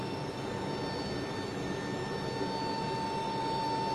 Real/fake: real